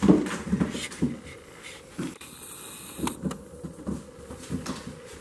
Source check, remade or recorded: recorded